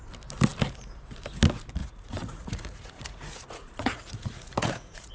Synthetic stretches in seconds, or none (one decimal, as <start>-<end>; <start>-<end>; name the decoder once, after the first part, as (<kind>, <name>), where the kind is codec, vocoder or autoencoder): 1.8-5.1 (vocoder, Vocos)